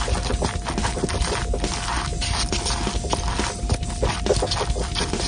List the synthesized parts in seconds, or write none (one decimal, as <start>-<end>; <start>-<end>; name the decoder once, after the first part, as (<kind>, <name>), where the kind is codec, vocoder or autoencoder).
none